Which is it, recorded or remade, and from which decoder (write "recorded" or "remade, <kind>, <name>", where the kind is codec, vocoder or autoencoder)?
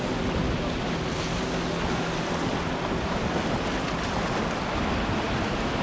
recorded